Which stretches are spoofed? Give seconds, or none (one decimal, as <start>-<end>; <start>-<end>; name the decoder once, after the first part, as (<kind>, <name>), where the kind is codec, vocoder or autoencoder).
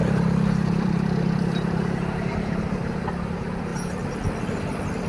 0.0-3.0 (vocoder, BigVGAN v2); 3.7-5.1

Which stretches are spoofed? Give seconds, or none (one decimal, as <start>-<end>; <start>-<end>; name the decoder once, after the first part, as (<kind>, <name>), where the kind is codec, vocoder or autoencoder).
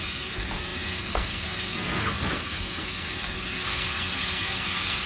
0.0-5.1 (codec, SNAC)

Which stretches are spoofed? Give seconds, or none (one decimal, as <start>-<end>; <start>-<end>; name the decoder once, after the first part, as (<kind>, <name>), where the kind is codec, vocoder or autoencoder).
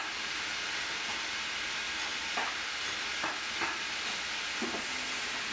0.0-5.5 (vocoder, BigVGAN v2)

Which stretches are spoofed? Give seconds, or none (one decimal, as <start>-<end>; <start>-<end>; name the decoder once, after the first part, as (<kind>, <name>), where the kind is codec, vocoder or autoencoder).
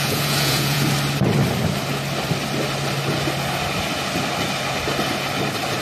0.0-0.8 (vocoder, Vocos)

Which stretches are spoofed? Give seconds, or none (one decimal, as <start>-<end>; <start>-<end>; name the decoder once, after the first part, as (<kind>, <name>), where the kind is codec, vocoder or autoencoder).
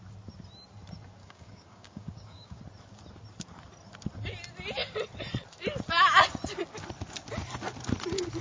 1.2-2.6 (codec, DAC)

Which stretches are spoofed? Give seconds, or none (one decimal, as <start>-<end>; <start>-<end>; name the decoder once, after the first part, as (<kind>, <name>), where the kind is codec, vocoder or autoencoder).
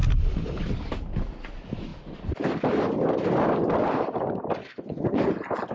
4.6-5.2 (codec, HILCodec)